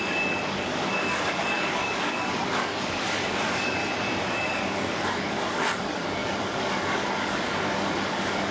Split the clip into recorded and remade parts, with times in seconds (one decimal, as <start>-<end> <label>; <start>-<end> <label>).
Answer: 0.0-3.8 remade; 3.8-4.3 recorded; 4.3-8.5 remade